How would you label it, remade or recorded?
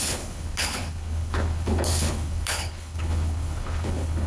remade